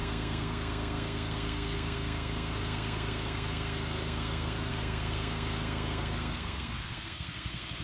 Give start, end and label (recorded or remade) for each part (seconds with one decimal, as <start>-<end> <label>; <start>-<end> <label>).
0.0-7.8 remade